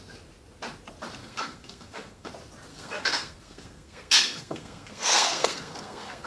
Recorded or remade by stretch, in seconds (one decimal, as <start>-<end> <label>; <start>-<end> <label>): 0.0-1.2 recorded; 1.2-2.3 remade; 2.3-2.7 recorded; 2.7-6.3 remade